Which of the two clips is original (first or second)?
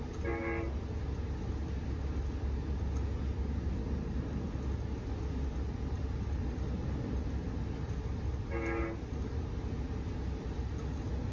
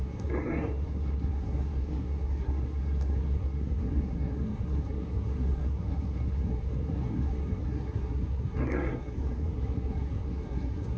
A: first